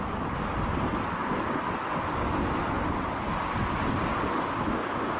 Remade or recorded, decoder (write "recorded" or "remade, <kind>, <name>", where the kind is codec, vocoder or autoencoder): recorded